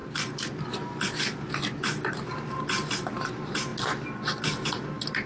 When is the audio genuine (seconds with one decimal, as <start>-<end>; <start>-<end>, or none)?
none